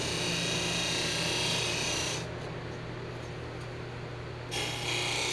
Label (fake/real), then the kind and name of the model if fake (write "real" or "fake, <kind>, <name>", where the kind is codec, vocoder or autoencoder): real